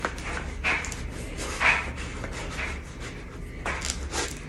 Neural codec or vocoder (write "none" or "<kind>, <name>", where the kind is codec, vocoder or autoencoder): none